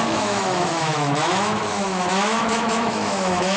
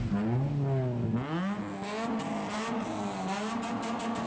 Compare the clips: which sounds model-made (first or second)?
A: first